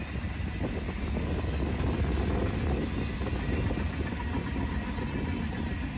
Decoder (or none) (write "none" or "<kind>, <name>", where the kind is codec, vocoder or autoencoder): none